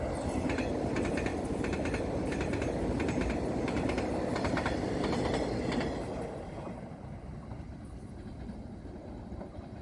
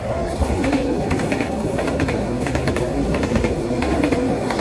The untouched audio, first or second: first